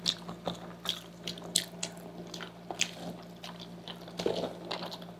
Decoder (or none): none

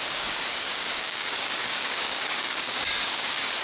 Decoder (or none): codec, DAC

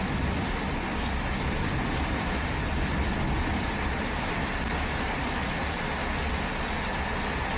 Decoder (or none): none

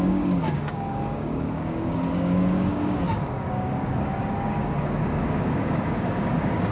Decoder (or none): codec, DAC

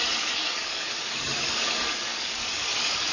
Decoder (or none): codec, DAC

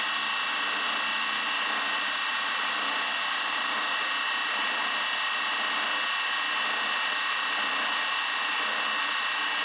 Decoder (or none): none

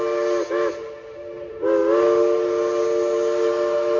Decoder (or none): none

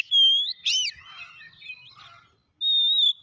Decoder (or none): none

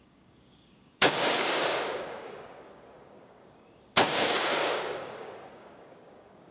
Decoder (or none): codec, DAC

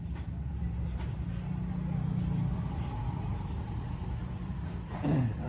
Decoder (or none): none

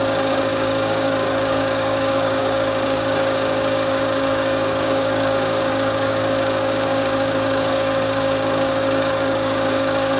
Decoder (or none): codec, DAC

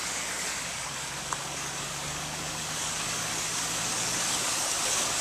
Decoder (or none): codec, DAC